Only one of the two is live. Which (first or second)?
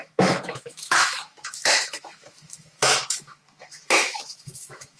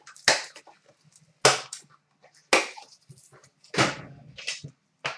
second